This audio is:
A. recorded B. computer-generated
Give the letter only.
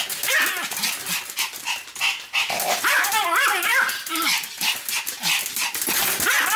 A